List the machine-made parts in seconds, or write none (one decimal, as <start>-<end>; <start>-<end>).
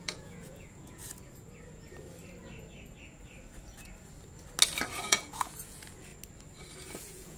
0.0-1.0; 5.0-6.1; 7.0-7.4